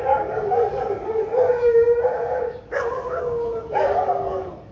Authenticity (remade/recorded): remade